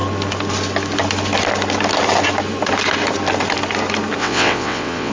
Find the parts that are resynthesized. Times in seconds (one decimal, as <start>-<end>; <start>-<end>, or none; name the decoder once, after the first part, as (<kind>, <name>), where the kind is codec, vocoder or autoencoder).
4.2-5.1 (vocoder, WaveNeXt)